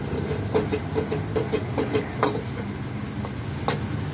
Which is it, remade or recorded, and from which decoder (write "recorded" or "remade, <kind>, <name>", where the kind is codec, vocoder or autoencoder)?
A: recorded